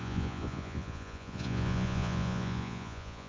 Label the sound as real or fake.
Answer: fake